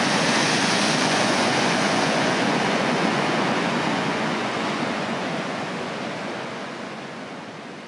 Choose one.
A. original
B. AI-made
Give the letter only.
B